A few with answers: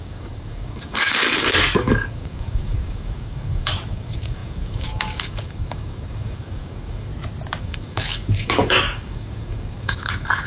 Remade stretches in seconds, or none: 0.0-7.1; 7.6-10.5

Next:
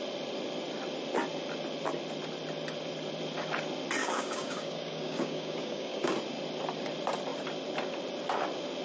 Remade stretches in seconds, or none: 4.0-6.1